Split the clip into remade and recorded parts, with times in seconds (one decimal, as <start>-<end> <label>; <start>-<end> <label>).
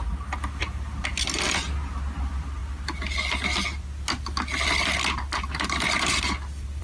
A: 0.0-6.8 recorded